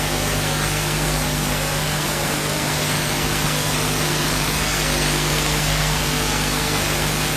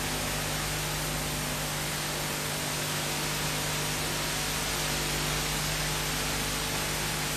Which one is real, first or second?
second